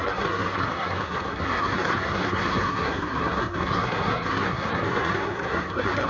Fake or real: fake